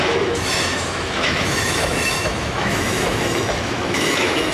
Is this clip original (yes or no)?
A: no